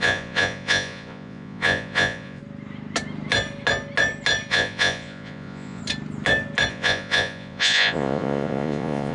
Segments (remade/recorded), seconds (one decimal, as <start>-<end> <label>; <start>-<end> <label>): 0.0-2.4 remade; 2.4-4.5 recorded; 4.5-5.8 remade; 5.8-6.7 recorded; 6.7-9.1 remade